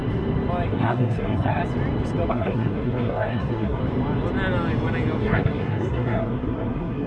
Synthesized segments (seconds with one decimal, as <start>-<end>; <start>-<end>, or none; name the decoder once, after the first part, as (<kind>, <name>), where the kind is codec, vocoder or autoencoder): 0.7-1.6 (codec, SNAC); 2.3-3.8; 5.2-7.1